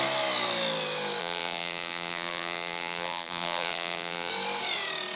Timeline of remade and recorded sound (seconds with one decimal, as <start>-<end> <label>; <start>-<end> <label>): 0.0-1.2 recorded; 1.2-4.3 remade; 4.3-5.2 recorded